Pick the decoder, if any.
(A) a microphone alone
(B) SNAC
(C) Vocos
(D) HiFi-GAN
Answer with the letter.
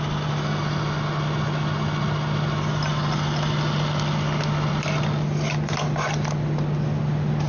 A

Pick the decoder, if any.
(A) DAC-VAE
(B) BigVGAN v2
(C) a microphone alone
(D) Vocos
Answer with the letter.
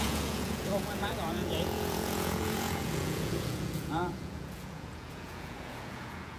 D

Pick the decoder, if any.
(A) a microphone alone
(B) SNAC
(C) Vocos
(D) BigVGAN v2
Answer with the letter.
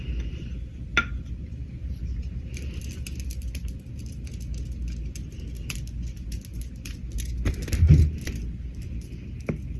A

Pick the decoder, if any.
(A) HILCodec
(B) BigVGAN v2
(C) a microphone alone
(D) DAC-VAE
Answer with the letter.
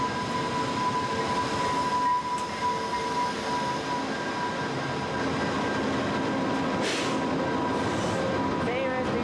C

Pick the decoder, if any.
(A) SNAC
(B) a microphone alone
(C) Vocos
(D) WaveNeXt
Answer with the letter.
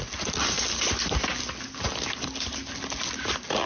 B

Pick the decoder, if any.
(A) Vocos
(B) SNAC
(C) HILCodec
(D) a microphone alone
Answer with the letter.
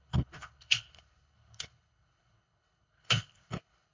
C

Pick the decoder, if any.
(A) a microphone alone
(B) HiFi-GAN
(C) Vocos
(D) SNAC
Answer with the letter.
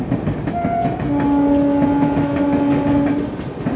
A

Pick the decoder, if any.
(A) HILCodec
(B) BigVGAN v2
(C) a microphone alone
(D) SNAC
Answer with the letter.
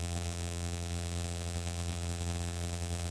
B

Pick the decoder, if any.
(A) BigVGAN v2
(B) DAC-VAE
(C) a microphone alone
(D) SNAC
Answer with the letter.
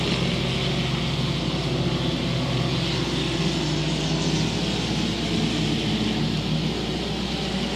C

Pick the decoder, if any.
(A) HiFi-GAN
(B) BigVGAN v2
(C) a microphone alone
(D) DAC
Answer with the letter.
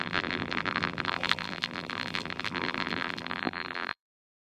B